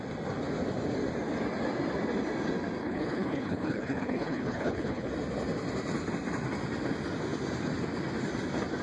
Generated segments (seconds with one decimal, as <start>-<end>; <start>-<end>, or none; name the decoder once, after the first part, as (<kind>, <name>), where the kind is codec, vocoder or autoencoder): 2.8-5.1 (codec, HILCodec)